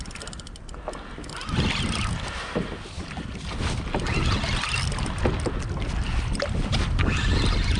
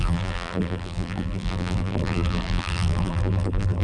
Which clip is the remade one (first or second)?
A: second